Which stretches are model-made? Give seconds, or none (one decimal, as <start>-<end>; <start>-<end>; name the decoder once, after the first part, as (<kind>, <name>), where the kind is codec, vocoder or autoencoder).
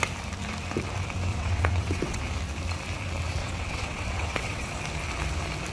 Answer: 1.3-2.2 (vocoder, WaveNeXt); 3.4-4.7